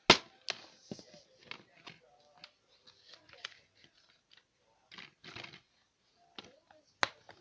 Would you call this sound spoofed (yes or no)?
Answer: no